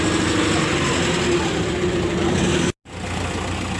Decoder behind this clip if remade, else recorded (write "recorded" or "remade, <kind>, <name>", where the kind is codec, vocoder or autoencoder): recorded